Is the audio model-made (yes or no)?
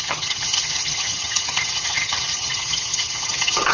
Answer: yes